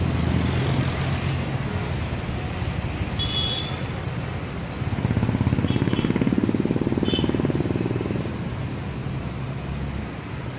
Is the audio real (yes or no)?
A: yes